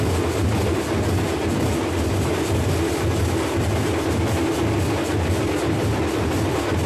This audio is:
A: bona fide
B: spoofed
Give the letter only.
A